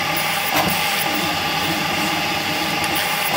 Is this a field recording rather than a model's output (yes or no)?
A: yes